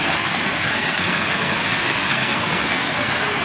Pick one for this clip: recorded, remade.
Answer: remade